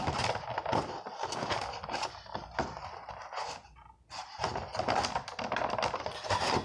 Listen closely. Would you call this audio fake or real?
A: real